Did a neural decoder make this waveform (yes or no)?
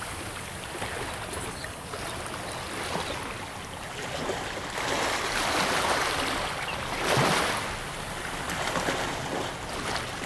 no